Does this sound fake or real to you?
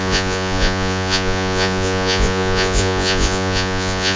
fake